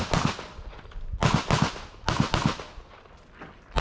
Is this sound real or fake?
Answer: real